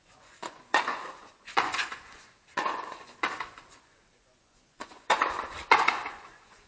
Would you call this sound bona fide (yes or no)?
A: no